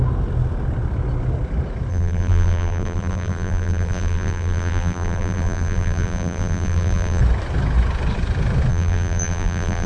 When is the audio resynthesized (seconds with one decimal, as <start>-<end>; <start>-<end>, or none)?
1.9-7.2; 8.7-9.9